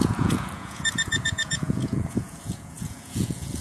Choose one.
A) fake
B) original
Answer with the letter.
A